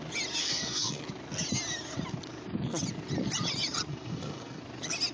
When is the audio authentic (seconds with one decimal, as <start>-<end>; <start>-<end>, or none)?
0.0-0.4; 1.0-3.9; 4.6-5.1